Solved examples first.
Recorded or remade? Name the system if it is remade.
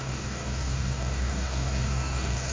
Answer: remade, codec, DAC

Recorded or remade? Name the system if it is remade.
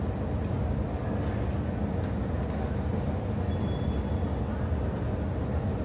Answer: recorded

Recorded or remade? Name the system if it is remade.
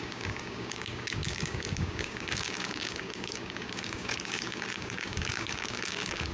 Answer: remade, codec, DAC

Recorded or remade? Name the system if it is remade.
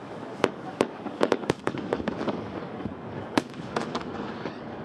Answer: remade, codec, DAC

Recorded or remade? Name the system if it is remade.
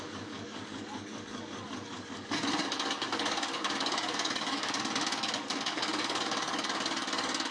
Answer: remade, codec, DAC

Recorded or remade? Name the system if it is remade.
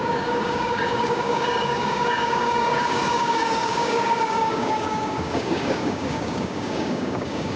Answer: remade, codec, DAC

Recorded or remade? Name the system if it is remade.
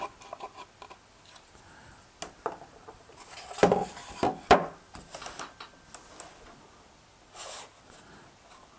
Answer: recorded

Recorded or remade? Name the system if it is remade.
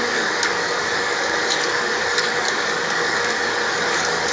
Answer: remade, codec, DAC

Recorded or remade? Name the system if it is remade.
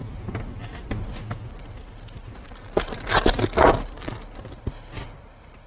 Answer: recorded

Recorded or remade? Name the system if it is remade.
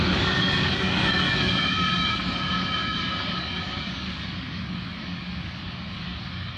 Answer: remade, codec, DAC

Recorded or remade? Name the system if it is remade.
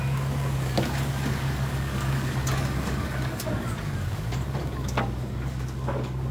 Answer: remade, codec, DAC